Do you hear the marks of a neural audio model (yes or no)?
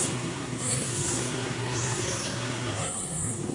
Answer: yes